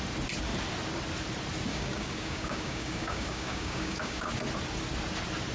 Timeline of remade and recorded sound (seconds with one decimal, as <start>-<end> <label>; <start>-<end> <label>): 0.0-1.7 recorded; 1.7-4.3 remade; 4.3-5.5 recorded

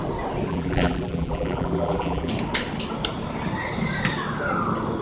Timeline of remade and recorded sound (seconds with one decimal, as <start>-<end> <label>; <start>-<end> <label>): 0.0-0.5 recorded; 0.5-2.3 remade; 2.3-5.0 recorded

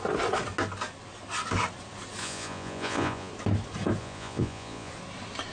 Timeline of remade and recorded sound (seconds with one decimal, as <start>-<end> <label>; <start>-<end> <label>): 0.0-2.2 recorded; 2.2-3.3 remade; 3.3-4.0 recorded; 4.0-4.9 remade; 4.9-5.5 recorded

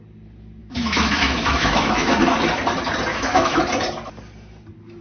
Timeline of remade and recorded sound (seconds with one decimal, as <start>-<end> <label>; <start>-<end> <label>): 0.0-0.6 recorded; 0.6-2.2 remade; 2.2-3.1 recorded; 3.1-3.6 remade; 3.6-5.0 recorded

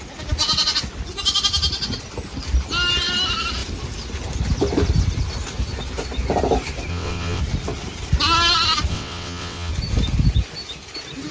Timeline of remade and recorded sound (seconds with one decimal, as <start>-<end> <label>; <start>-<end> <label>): 0.0-6.9 recorded; 6.9-7.4 remade; 7.4-8.9 recorded; 8.9-9.7 remade; 9.7-11.3 recorded